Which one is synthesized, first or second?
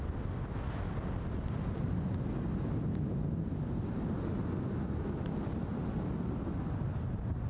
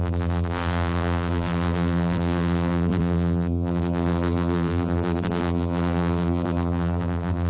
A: second